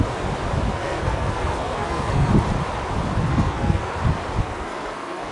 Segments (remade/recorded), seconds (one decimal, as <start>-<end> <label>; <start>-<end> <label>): 0.0-0.7 recorded; 0.7-2.3 remade; 2.3-3.3 recorded; 3.3-3.9 remade; 3.9-4.4 recorded; 4.4-5.3 remade